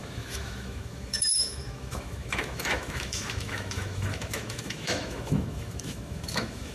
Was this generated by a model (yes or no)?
yes